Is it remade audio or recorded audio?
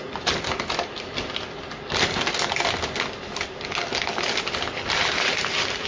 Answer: recorded